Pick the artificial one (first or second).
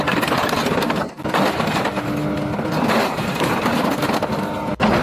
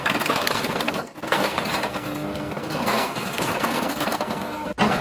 second